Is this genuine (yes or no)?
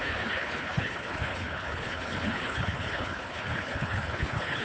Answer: no